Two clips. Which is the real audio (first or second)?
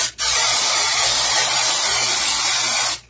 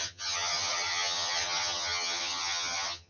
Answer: first